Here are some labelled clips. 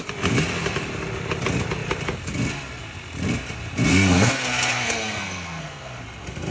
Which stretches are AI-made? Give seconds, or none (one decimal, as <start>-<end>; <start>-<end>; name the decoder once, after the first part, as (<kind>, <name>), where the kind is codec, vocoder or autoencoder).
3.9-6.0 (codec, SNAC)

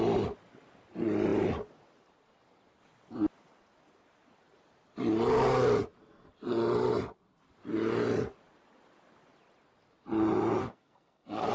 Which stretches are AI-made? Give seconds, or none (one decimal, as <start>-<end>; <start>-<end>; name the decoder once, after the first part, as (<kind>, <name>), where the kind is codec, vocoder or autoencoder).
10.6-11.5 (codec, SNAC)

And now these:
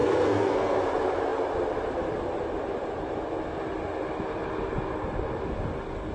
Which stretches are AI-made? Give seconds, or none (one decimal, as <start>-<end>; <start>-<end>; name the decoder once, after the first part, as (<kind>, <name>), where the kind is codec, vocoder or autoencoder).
0.0-0.8 (codec, SNAC)

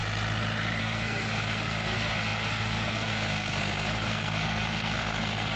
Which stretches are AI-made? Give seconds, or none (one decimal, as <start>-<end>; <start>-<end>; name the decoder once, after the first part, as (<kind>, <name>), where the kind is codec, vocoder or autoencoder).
0.8-5.6 (codec, SNAC)